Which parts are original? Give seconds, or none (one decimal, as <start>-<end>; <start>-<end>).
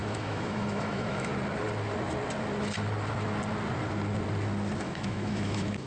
1.3-4.8